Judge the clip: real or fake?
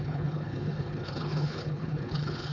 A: fake